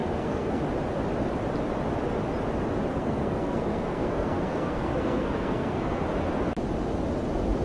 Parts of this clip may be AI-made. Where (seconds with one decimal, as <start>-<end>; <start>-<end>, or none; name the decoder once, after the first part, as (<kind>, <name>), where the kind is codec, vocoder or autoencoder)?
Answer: 0.0-0.6 (codec, SNAC); 2.9-6.0